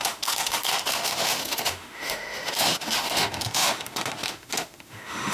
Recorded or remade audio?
remade